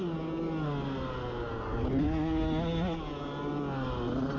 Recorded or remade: recorded